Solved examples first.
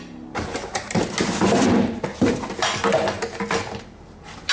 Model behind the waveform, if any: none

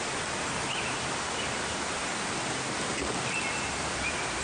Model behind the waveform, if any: none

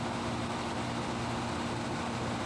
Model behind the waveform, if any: none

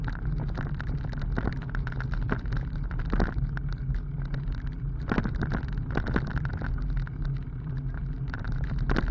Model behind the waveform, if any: none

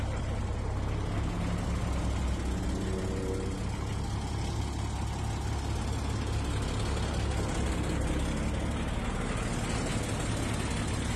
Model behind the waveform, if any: none